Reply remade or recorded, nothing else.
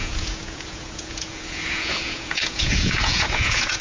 remade